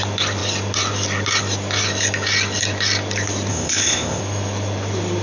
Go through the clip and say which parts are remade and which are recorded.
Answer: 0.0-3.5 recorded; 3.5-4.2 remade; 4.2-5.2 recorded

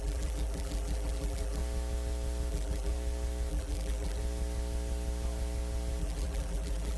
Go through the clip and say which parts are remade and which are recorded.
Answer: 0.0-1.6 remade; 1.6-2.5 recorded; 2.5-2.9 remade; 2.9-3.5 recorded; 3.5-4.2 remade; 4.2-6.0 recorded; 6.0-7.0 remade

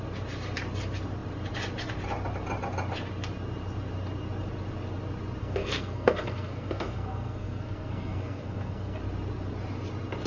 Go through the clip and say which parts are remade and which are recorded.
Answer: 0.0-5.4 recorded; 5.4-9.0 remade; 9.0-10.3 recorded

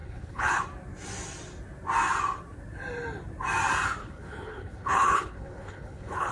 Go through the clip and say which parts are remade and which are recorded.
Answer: 0.0-0.6 remade; 0.6-4.0 recorded; 4.0-6.3 remade

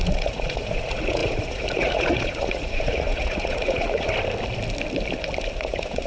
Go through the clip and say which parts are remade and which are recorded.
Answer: 0.0-4.1 remade; 4.1-5.6 recorded; 5.6-6.1 remade

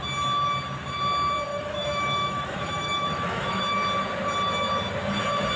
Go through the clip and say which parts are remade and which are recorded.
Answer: 0.0-1.5 recorded; 1.5-3.6 remade; 3.6-5.6 recorded